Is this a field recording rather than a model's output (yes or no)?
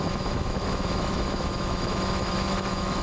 no